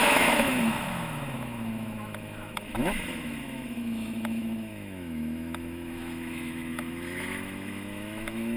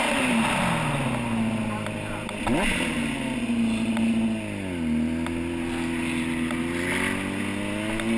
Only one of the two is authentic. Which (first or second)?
second